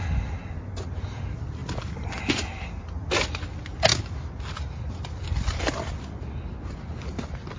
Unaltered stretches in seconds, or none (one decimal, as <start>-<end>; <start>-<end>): 0.0-1.6; 2.3-7.6